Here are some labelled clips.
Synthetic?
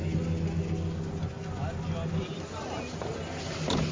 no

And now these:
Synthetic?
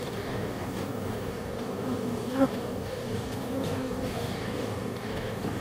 yes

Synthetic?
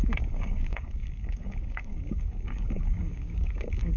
yes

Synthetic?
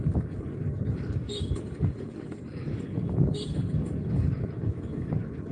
yes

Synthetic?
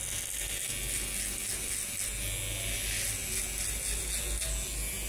no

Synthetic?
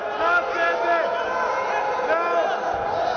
no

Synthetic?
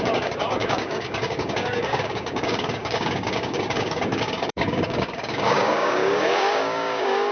yes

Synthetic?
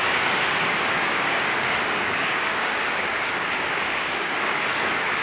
yes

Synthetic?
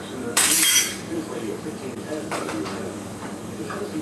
yes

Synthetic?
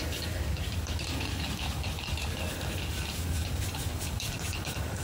yes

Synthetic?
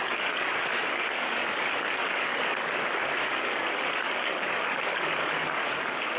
yes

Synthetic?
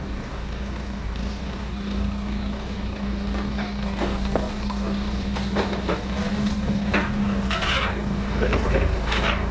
yes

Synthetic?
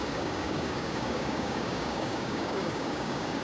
yes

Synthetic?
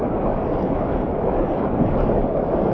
yes